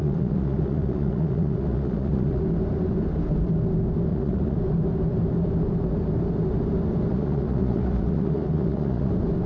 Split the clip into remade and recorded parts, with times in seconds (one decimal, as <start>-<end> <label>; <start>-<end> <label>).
0.0-2.4 remade; 2.4-4.1 recorded; 4.1-4.6 remade; 4.6-7.1 recorded; 7.1-9.1 remade; 9.1-9.5 recorded